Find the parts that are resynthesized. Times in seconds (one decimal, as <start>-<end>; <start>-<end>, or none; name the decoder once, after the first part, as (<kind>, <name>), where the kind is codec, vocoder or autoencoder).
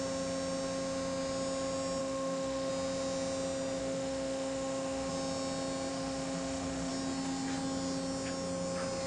2.0-2.7 (autoencoder, DAC-VAE); 3.8-5.1; 5.9-6.9